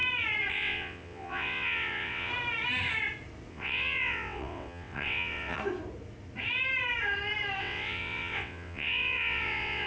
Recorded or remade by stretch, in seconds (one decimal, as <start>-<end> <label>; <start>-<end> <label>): 0.0-0.5 recorded; 0.5-2.3 remade; 2.3-3.5 recorded; 3.5-5.6 remade; 5.6-7.6 recorded; 7.6-9.9 remade